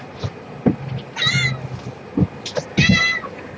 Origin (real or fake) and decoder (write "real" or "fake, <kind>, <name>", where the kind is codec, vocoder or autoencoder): real